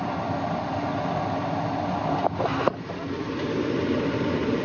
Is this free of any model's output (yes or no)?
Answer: yes